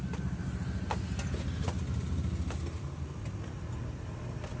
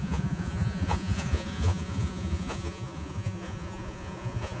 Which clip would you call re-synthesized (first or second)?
second